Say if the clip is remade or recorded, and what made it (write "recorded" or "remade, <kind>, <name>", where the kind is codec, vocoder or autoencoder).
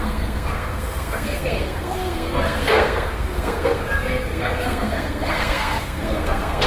remade, codec, SNAC